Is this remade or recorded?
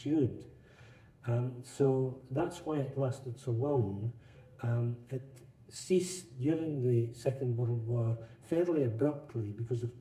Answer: remade